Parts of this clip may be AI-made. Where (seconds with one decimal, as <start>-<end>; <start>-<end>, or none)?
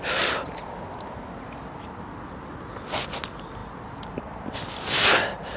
3.6-4.5